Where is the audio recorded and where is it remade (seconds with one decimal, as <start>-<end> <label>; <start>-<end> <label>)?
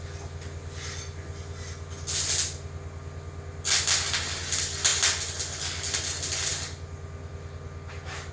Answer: 0.0-8.3 recorded